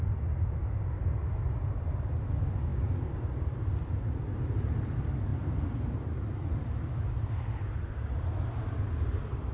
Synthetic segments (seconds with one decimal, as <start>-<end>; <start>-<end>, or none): none